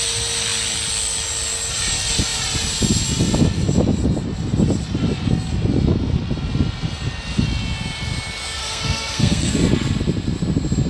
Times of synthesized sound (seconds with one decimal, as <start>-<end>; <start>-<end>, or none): 8.6-9.5